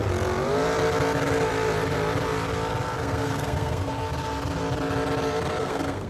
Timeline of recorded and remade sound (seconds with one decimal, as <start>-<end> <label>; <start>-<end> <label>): 0.0-3.0 recorded; 3.0-3.9 remade; 3.9-5.6 recorded; 5.6-6.1 remade